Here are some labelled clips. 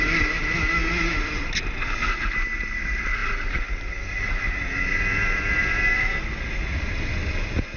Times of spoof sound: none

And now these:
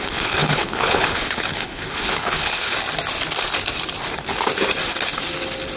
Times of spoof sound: 0.0-2.7 (codec, HILCodec)

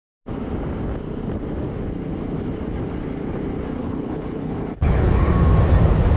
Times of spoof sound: 3.8-5.3 (codec, HILCodec)

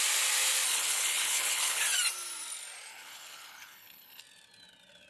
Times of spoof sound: 0.7-1.8 (codec, HILCodec); 2.9-4.2

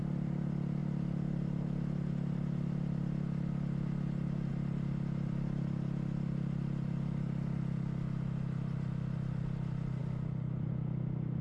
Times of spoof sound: none

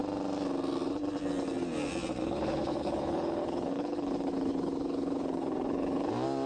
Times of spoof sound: 2.2-6.1 (codec, HILCodec)